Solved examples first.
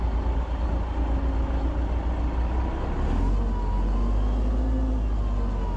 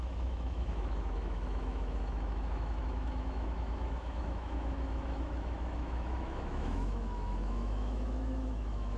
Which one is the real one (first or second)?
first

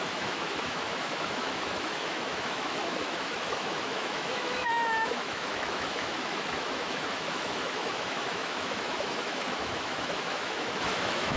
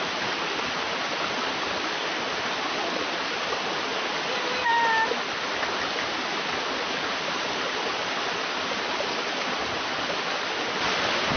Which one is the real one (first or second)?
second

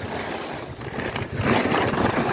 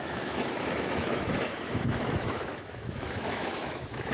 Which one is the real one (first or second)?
first